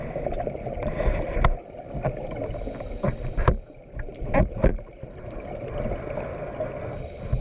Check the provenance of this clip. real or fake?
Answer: real